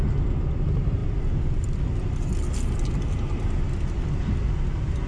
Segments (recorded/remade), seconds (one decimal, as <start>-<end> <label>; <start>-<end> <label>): 0.0-5.1 recorded